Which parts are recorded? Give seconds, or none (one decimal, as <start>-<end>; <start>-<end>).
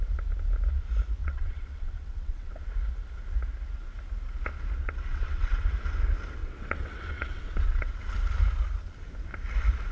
0.0-1.2; 2.6-4.8; 5.7-6.4; 8.0-9.9